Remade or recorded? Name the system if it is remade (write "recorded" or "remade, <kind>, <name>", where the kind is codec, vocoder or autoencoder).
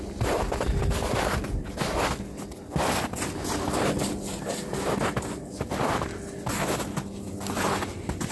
recorded